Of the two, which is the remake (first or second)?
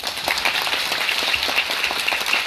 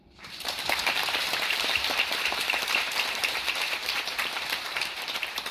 second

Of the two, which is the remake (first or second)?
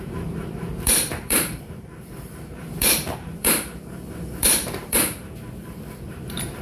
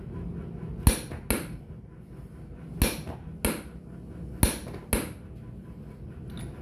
first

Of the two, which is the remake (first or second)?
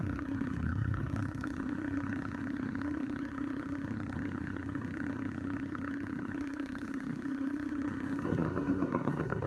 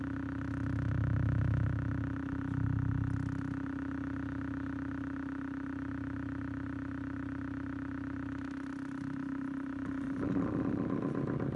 first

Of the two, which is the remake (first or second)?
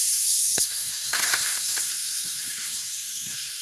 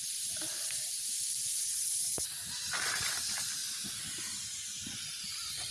first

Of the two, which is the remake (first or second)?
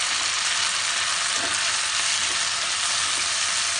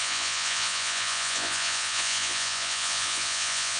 second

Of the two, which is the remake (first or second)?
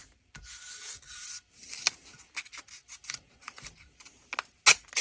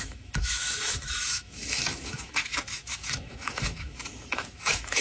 second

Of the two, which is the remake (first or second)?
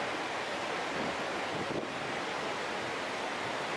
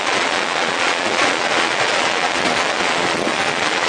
second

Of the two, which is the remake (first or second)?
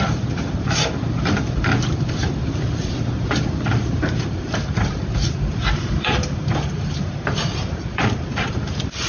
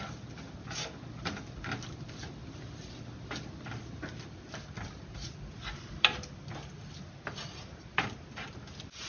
first